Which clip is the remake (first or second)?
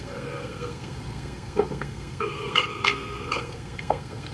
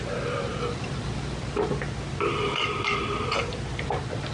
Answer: first